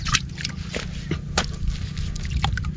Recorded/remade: recorded